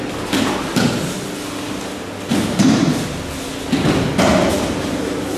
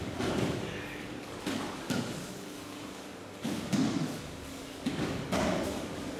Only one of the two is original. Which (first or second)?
first